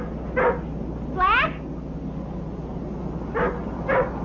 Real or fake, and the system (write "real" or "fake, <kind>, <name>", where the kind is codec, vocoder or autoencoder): real